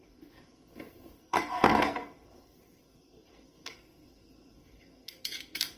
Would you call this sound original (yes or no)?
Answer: no